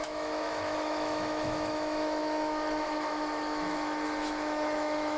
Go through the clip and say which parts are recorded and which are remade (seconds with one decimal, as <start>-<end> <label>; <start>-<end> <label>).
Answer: 0.0-5.2 remade